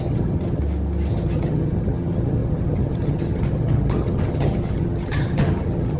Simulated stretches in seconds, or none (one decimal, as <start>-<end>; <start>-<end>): 0.0-0.6; 1.1-6.0